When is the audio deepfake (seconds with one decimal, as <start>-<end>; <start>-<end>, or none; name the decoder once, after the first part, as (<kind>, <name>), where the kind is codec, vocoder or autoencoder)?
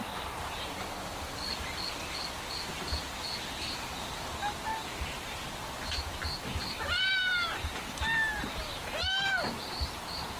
none